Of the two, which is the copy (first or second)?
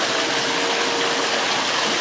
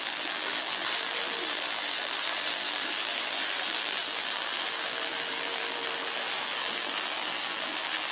second